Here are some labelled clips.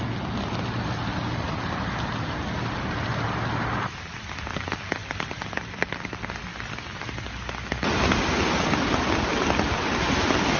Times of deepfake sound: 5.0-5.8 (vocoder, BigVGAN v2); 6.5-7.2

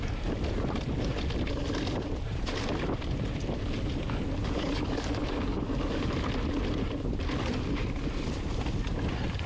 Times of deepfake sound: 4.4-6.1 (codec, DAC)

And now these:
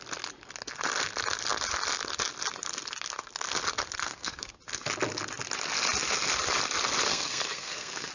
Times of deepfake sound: 4.0-4.5 (codec, SNAC); 7.1-8.1

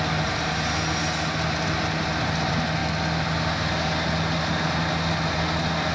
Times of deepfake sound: none